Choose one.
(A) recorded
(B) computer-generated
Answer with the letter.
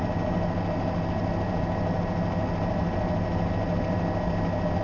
A